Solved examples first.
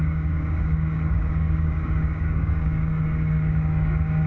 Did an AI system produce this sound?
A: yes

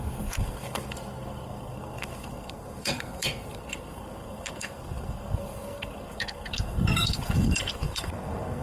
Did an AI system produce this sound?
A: yes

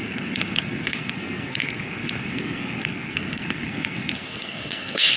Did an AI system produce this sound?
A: yes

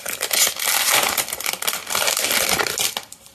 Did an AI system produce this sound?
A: no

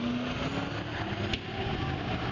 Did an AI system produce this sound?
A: no